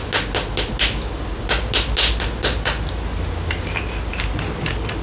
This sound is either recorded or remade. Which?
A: recorded